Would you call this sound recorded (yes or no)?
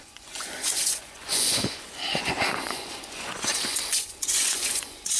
no